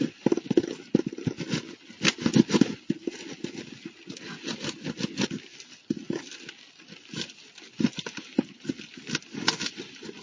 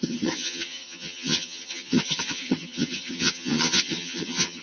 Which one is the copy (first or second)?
second